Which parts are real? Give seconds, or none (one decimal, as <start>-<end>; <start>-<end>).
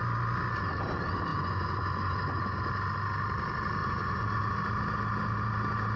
0.0-1.3; 2.7-3.8; 4.5-6.0